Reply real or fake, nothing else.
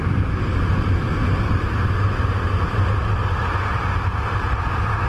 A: real